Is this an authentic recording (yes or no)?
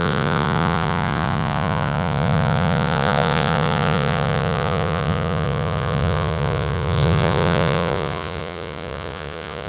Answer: no